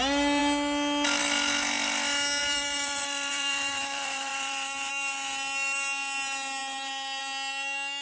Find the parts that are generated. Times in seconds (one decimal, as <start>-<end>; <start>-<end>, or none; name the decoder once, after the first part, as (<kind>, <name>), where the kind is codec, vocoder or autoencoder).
2.4-4.9 (vocoder, BigVGAN v2)

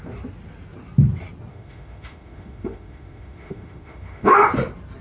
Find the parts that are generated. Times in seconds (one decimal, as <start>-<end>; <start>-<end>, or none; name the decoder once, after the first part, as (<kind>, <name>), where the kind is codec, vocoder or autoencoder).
1.5-4.5 (autoencoder, DAC-VAE)

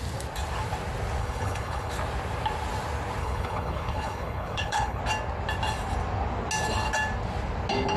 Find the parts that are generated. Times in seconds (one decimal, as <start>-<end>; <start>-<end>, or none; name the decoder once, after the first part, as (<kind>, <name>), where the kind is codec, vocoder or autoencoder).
1.2-1.9 (codec, HILCodec); 3.2-5.0

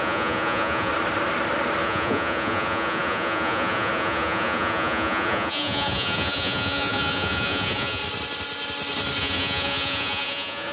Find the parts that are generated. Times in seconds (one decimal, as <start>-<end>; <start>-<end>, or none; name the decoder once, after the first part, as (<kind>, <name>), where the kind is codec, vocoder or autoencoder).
0.0-0.9 (vocoder, Vocos); 1.8-8.0; 9.2-10.7

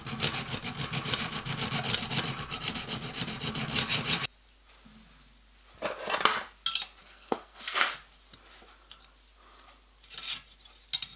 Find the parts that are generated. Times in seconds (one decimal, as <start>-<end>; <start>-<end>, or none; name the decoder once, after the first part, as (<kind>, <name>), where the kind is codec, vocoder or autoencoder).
7.0-7.9 (codec, SNAC)

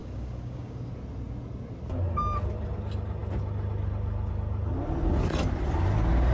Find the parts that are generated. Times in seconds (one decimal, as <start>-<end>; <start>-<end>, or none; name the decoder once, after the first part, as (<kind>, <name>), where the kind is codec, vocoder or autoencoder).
0.0-0.9 (codec, DAC)

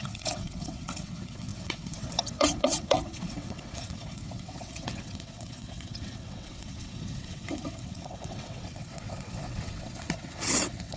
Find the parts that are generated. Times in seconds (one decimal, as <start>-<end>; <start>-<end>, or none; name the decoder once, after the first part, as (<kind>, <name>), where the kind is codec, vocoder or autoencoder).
0.0-11.0 (vocoder, WaveNeXt)